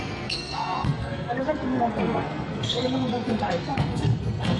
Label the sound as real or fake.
fake